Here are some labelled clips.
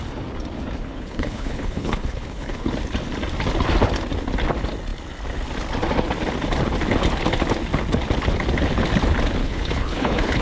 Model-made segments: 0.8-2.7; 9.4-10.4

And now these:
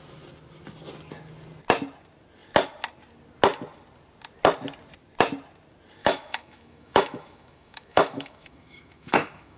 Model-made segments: 6.0-9.6